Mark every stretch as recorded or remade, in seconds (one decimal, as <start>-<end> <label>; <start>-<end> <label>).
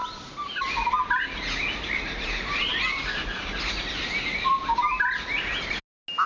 0.0-1.2 remade; 1.2-2.7 recorded; 2.7-4.6 remade; 4.6-6.3 recorded